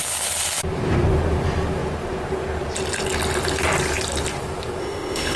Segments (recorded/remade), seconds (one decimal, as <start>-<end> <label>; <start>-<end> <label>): 0.0-4.8 recorded; 4.8-5.4 remade